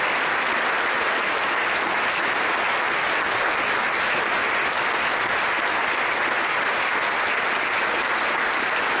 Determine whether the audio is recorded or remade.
recorded